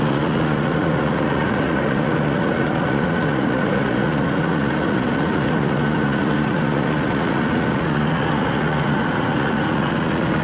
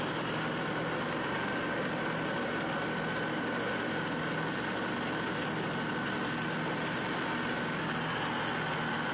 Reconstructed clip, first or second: first